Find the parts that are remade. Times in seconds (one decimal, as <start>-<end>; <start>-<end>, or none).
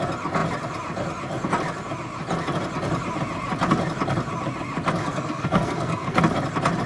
5.0-6.2